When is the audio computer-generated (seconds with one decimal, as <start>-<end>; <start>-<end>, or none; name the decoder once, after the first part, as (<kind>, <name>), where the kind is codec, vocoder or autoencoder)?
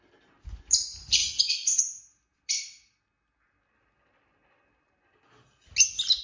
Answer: 1.2-1.8 (vocoder, Vocos)